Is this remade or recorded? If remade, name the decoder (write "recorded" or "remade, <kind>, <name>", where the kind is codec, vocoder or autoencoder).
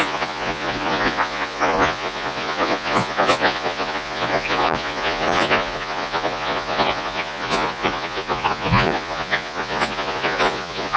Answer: remade, vocoder, Vocos